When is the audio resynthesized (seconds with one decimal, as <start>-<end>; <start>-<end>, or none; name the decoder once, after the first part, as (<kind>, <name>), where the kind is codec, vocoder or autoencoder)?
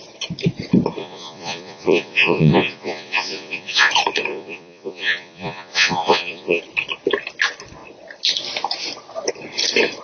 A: 1.0-3.9 (vocoder, Vocos); 4.3-6.6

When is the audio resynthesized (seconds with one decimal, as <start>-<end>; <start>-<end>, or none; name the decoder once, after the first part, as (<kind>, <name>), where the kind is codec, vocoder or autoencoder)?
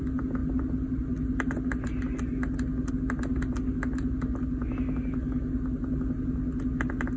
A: none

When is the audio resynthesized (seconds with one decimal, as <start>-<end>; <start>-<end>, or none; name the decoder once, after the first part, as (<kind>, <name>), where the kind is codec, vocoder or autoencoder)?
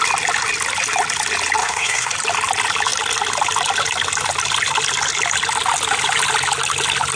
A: 1.6-2.1 (codec, SNAC)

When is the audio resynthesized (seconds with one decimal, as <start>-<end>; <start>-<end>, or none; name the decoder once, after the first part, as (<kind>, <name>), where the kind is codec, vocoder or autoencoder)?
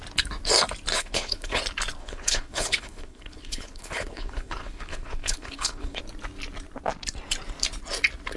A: 0.9-1.6 (codec, HILCodec); 2.0-6.0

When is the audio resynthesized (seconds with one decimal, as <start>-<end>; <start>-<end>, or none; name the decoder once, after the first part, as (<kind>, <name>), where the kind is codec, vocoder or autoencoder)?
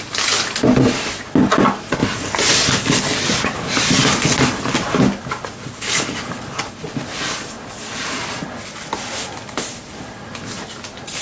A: none